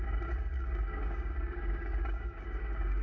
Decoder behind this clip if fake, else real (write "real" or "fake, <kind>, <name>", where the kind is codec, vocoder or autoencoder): fake, codec, DAC